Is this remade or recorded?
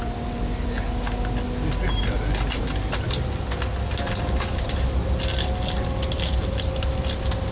recorded